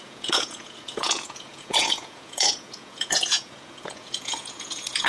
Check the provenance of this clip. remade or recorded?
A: remade